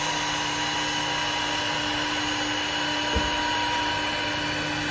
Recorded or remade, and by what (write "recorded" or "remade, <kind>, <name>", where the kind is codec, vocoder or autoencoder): recorded